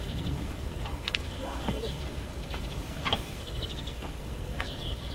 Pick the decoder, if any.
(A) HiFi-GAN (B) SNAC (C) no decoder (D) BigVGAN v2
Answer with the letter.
B